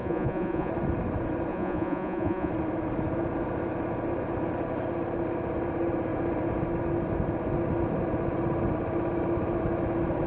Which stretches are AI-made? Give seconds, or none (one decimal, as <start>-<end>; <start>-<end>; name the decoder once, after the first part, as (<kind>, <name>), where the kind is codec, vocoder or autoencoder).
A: 0.0-0.7 (vocoder, Vocos); 1.5-2.5